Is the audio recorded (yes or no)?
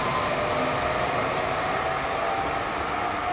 yes